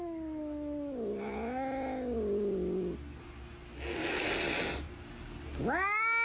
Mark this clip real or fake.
real